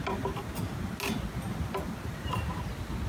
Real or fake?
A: real